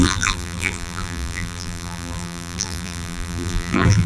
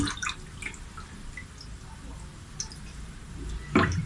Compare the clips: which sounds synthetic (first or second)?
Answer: first